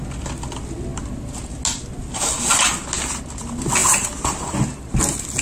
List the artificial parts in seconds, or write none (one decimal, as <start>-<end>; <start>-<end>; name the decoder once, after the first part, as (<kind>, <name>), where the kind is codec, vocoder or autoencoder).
none